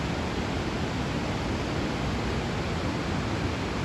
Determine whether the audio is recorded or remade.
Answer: recorded